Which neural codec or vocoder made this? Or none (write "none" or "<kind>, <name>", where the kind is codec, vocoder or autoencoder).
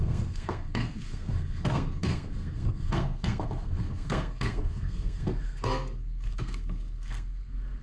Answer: codec, SNAC